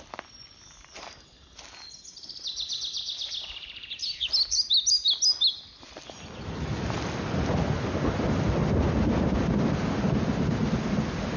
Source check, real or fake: real